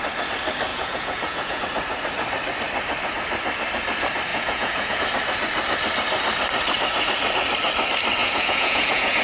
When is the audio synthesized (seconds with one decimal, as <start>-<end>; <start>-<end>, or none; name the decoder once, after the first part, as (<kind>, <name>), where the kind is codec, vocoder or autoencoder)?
0.7-1.6 (vocoder, Vocos); 4.3-5.0; 8.2-9.2